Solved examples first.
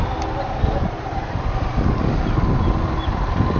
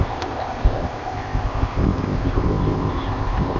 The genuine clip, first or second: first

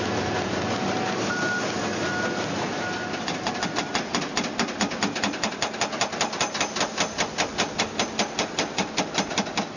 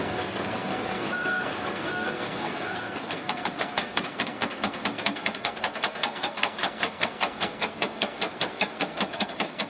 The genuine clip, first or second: first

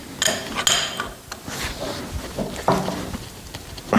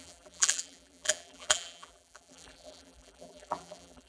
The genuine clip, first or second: first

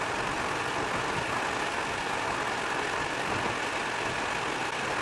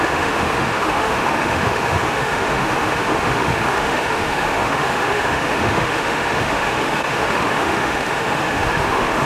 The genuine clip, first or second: first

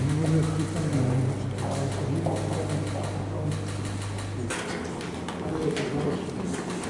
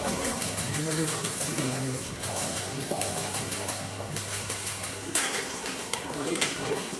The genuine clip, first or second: first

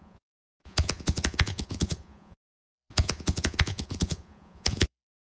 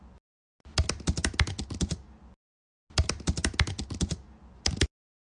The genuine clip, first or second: second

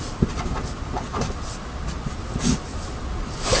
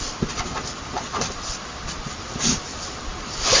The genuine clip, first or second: first